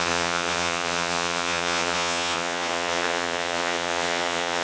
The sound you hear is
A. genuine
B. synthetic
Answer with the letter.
B